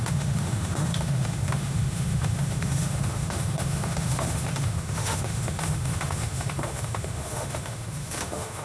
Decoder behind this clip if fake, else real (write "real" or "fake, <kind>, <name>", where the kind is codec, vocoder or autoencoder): fake, autoencoder, DAC-VAE